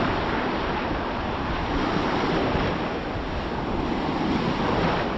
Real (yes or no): yes